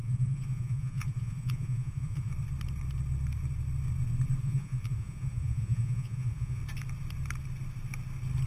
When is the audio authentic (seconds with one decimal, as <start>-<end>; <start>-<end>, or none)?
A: 2.3-4.4; 6.6-8.5